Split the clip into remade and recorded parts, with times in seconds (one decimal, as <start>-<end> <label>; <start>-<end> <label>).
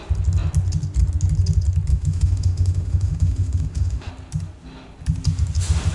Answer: 0.0-1.9 recorded; 1.9-4.1 remade; 4.1-5.9 recorded